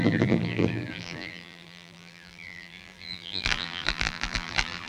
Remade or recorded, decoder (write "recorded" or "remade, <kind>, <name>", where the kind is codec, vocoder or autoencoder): remade, vocoder, BigVGAN v2